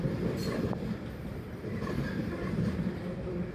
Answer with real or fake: real